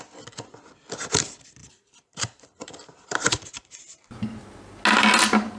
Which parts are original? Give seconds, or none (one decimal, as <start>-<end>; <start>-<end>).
0.0-1.6; 3.5-5.6